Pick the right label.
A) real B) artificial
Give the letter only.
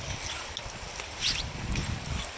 A